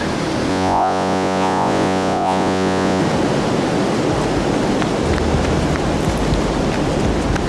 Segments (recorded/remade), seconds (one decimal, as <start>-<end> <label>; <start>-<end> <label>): 0.0-0.5 recorded; 0.5-3.0 remade; 3.0-7.5 recorded